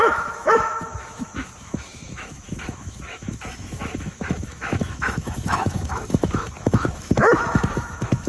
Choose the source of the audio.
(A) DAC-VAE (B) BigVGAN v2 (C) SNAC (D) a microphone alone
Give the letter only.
A